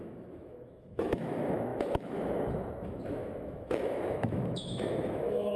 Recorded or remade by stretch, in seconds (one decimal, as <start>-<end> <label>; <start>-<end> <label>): 0.0-5.6 remade